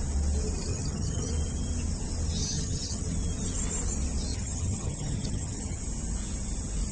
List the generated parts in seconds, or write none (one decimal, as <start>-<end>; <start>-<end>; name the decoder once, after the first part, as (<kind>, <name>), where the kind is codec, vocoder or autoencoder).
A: 0.7-1.3 (vocoder, HiFi-GAN); 2.4-3.0; 4.3-5.8